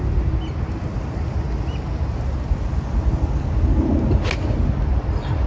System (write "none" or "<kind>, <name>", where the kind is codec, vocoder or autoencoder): none